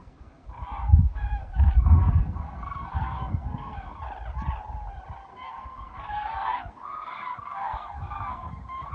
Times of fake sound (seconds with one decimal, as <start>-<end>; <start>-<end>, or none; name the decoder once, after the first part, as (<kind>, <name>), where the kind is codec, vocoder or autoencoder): 0.0-4.0 (codec, SNAC); 5.3-8.9